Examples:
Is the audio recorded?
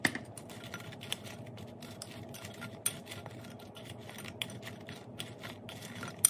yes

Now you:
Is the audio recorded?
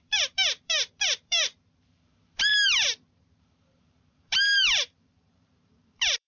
no